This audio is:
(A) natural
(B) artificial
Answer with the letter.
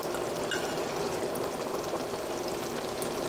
A